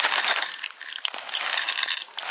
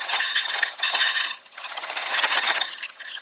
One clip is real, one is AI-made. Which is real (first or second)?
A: first